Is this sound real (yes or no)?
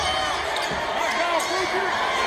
yes